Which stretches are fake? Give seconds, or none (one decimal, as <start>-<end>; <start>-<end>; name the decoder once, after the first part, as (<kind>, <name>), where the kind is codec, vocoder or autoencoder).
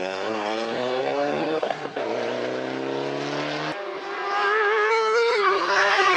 0.0-2.0 (codec, SNAC); 4.9-6.2